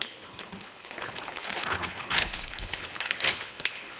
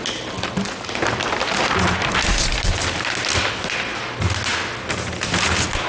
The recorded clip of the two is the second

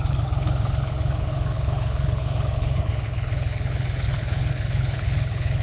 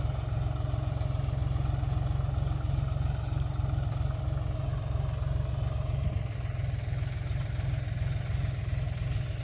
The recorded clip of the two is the second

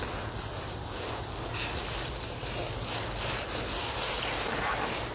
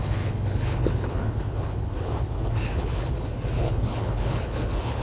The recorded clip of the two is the first